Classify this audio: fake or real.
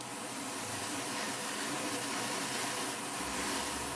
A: fake